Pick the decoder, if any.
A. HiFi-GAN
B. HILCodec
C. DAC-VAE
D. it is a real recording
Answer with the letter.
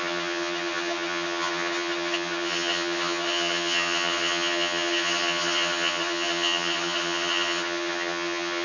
A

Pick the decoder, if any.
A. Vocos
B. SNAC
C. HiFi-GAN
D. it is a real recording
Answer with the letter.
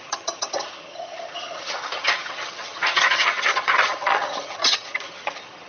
C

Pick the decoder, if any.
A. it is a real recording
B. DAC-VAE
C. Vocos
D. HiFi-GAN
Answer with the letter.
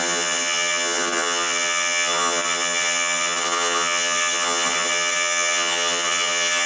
D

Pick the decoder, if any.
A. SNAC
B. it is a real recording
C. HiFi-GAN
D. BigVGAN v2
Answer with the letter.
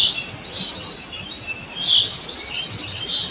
B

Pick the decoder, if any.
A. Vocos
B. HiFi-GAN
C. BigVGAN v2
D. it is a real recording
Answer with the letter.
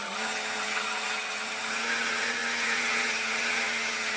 B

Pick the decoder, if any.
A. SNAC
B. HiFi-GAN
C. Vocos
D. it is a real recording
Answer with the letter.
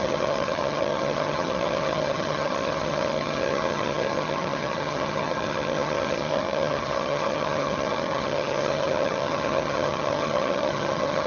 B